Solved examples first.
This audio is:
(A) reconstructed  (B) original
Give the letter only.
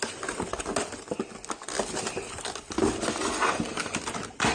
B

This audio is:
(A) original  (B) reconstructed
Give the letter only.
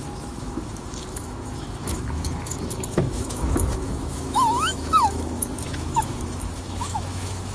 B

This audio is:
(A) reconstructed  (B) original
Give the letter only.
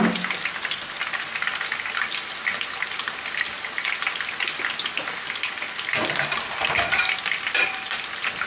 B